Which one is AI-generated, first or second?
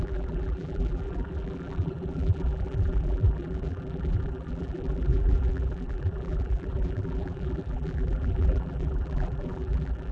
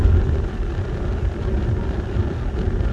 first